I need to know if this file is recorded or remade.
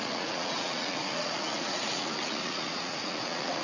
remade